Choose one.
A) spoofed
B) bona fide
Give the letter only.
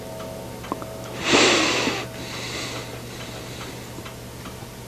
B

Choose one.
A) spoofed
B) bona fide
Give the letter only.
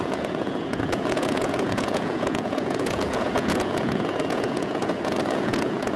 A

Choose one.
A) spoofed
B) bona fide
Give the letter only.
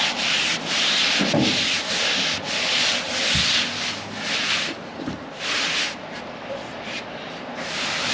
B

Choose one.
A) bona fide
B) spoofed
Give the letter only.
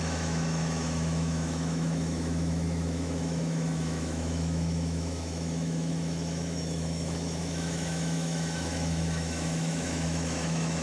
B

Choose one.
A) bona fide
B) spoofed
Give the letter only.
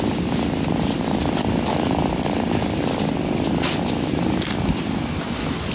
A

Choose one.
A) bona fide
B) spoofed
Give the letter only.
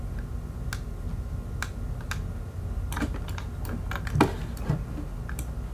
A